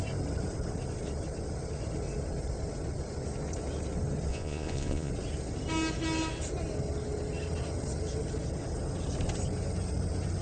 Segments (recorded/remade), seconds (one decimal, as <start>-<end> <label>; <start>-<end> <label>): 0.0-4.3 recorded; 4.3-5.1 remade; 5.1-10.4 recorded